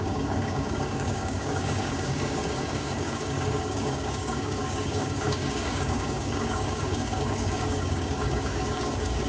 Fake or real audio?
fake